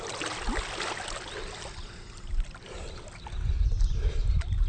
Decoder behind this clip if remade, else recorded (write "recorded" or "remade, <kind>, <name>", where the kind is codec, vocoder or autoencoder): recorded